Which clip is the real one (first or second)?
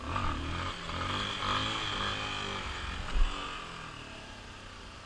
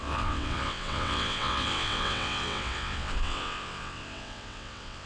first